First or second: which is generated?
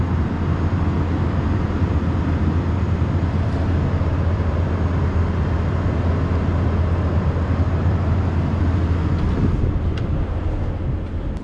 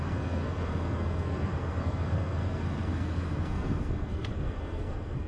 second